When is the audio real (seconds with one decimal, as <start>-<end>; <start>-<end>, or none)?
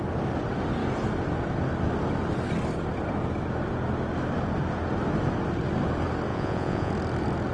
0.0-6.3; 6.9-7.5